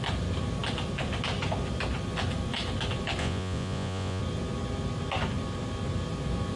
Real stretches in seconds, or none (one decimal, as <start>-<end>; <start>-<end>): 0.0-3.2; 4.2-6.6

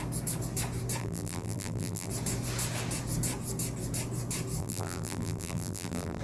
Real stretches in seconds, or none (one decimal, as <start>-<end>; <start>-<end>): 0.0-1.0; 2.1-4.6

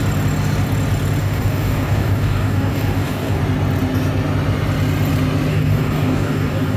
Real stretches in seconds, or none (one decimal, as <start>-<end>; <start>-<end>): 0.0-1.2; 3.4-5.5

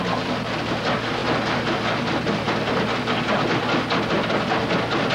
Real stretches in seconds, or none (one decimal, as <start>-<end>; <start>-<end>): 0.0-5.1

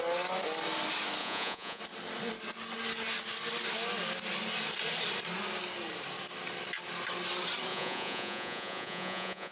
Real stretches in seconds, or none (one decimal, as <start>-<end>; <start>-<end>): 0.0-1.2; 1.8-7.7

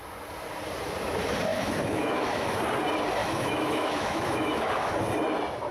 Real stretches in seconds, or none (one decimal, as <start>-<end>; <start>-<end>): 0.0-1.5; 2.6-3.2; 4.9-5.7

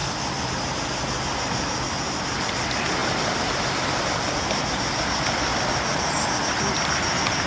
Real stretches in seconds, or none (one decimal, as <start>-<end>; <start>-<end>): 0.0-7.5

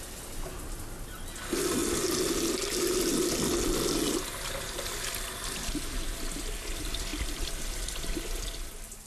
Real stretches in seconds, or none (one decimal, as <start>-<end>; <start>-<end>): 0.0-9.1